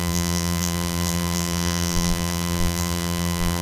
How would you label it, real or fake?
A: fake